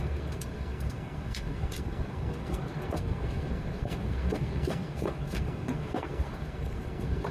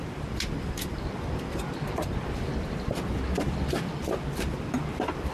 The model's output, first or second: first